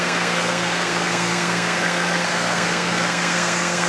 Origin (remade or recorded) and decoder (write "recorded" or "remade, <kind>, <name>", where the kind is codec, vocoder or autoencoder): remade, codec, SNAC